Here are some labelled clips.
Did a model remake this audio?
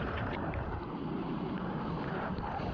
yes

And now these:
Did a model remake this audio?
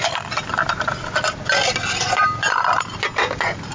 no